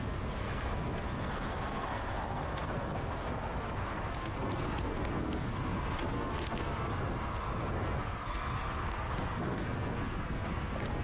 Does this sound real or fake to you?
fake